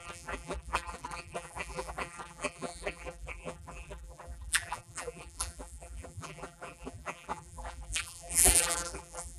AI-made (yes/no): yes